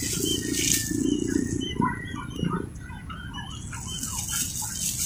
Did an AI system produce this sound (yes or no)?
no